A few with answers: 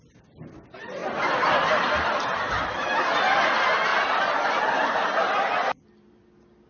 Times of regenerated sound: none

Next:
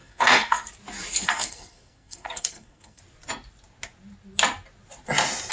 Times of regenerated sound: 0.0-0.7 (codec, SNAC); 1.1-3.0

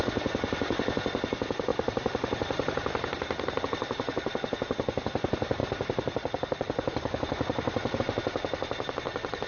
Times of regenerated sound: 1.7-3.6 (vocoder, BigVGAN v2); 5.6-8.0

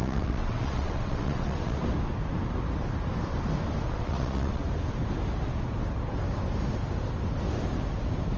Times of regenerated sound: 0.0-1.8 (vocoder, WaveNeXt); 3.9-4.6